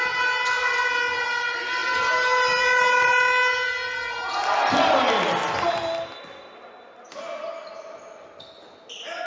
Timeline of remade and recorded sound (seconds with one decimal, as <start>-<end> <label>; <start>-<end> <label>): 0.0-9.3 recorded